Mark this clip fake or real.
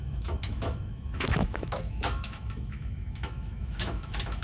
fake